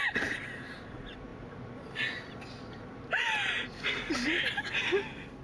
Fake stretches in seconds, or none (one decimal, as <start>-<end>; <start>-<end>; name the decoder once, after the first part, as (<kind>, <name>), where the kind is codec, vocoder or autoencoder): none